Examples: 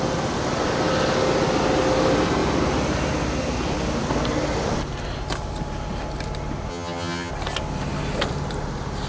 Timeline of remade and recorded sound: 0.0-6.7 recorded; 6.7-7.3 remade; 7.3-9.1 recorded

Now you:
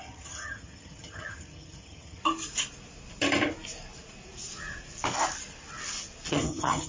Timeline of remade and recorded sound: 0.0-2.2 remade; 2.2-6.3 recorded; 6.3-6.9 remade